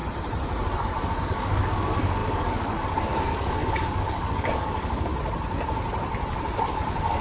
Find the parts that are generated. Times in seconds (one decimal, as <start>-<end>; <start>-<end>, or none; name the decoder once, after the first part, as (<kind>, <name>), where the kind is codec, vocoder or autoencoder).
1.2-5.1 (codec, DAC); 6.7-7.2

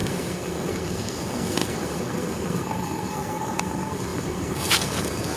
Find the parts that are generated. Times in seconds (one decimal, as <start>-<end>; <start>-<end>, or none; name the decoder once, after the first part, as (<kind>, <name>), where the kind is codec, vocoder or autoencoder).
0.0-5.4 (codec, SNAC)

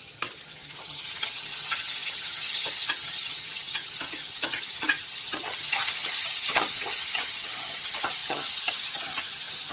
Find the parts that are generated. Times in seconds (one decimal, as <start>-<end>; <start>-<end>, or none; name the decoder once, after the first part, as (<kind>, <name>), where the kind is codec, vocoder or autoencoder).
0.0-9.7 (vocoder, HiFi-GAN)

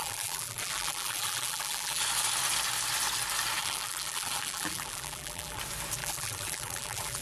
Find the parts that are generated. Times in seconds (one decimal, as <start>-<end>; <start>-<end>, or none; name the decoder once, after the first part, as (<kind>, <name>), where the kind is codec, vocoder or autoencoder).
0.0-2.0 (vocoder, BigVGAN v2); 3.6-5.6; 6.0-7.2

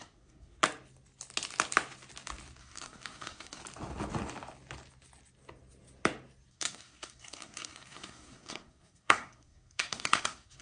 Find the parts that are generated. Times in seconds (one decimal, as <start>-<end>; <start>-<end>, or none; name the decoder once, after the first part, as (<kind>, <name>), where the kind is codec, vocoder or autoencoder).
0.0-0.6 (codec, SNAC); 2.6-3.6; 6.5-10.6

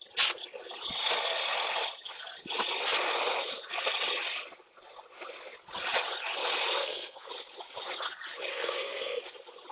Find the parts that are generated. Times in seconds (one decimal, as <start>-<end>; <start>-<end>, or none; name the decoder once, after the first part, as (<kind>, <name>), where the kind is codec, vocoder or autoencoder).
6.8-7.3 (codec, SNAC); 8.5-9.2

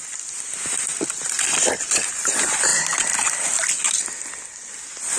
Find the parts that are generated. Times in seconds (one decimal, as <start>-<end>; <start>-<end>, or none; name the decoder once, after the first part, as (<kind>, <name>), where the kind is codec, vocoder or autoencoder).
0.0-2.7 (vocoder, BigVGAN v2)